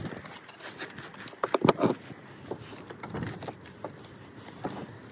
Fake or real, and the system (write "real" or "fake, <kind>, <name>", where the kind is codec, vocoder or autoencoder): real